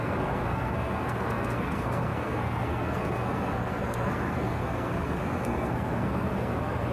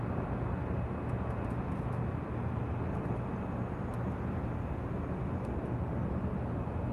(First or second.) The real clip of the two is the second